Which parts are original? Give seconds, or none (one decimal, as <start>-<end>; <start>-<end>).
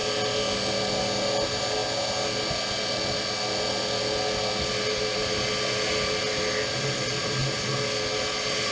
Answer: 0.0-8.7